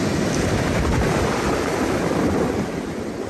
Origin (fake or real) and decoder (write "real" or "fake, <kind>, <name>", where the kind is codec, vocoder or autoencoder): real